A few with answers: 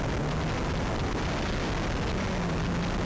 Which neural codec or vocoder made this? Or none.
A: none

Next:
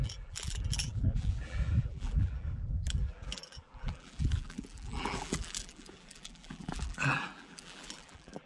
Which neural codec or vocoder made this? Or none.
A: vocoder, BigVGAN v2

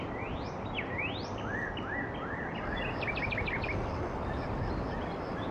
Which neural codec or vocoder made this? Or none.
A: none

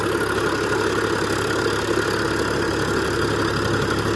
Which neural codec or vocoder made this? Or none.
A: none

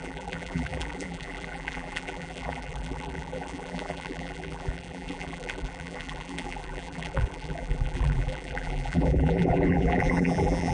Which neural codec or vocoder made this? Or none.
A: vocoder, BigVGAN v2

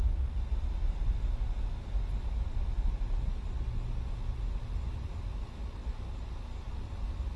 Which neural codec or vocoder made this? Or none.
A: none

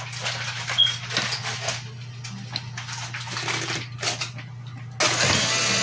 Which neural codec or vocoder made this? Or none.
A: none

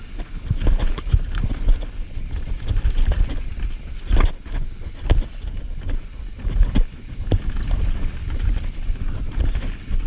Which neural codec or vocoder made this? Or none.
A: none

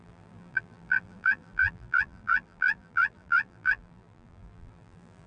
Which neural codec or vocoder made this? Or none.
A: vocoder, BigVGAN v2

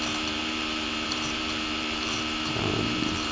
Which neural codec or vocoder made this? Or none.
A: vocoder, BigVGAN v2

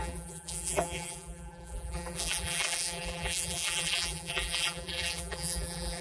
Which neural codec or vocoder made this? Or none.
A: vocoder, BigVGAN v2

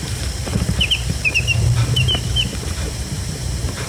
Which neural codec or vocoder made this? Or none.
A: vocoder, BigVGAN v2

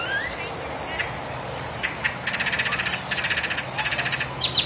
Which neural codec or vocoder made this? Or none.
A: none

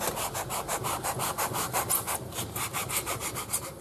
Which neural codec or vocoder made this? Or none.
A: vocoder, BigVGAN v2